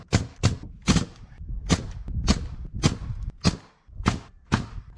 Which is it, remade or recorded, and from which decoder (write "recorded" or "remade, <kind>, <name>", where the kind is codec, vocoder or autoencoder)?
recorded